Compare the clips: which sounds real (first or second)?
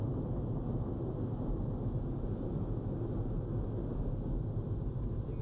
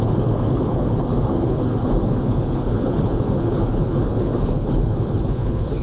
first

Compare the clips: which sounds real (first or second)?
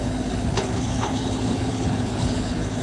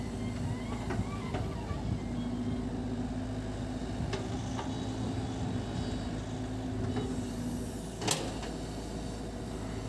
second